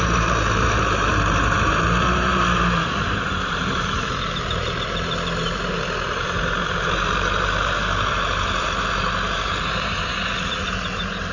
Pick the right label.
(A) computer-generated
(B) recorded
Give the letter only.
A